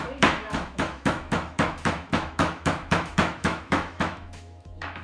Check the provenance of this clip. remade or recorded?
remade